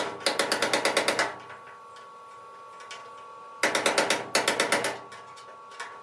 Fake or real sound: real